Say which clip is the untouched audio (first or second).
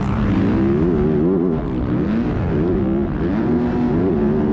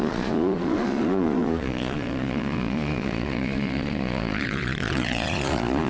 first